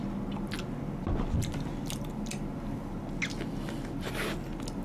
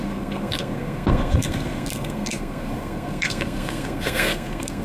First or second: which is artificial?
second